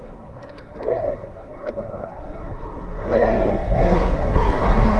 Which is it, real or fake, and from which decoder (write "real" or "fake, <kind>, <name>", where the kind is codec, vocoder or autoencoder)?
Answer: fake, codec, SNAC